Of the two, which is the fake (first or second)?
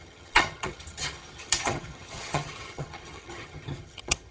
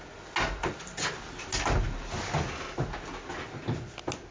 first